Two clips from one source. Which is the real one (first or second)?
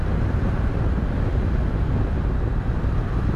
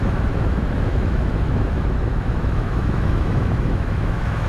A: first